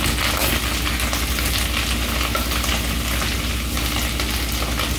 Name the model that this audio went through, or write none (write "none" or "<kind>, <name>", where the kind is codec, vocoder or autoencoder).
none